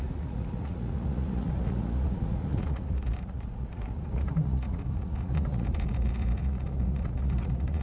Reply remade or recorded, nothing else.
remade